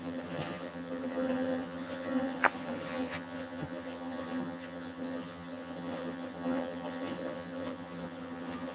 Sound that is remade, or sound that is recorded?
remade